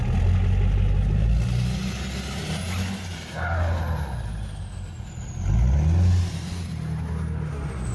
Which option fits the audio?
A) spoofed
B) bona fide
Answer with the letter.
B